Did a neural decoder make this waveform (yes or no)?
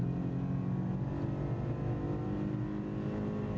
no